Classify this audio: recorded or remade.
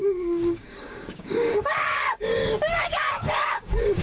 remade